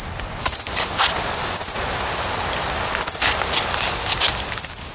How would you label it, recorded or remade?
recorded